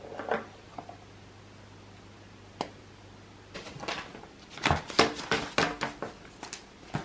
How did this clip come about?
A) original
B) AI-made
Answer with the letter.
A